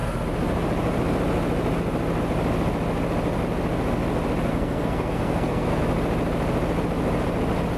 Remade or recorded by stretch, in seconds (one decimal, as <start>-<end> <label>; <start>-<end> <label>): 0.0-4.5 recorded; 4.5-5.8 remade; 5.8-7.8 recorded